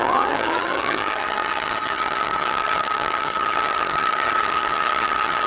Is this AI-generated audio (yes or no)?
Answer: yes